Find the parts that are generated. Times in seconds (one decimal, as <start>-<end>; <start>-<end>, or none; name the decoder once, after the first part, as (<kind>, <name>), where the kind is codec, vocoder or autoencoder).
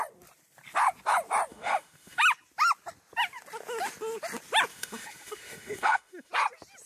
1.5-2.2 (autoencoder, DAC-VAE); 4.7-6.3